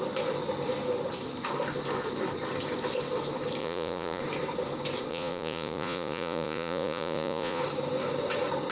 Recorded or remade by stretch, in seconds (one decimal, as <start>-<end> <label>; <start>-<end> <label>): 0.0-3.6 recorded; 3.6-4.2 remade; 4.2-5.1 recorded; 5.1-7.6 remade; 7.6-8.7 recorded